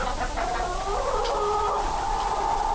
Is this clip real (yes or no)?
yes